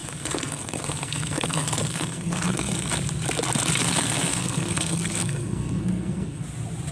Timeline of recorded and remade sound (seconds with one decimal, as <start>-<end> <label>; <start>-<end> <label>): 0.0-2.9 remade; 2.9-3.8 recorded; 3.8-6.4 remade; 6.4-6.9 recorded